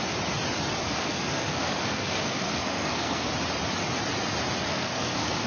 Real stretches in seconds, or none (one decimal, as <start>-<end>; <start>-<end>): 0.0-0.8; 3.3-4.7